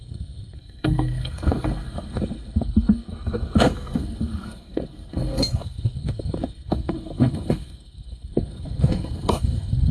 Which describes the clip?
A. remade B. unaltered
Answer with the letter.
A